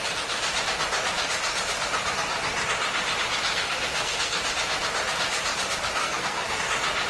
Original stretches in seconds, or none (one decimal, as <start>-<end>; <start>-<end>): 0.0-3.5; 4.4-6.0; 6.6-7.1